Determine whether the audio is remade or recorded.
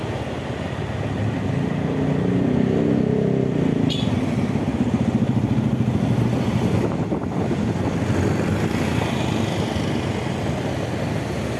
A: recorded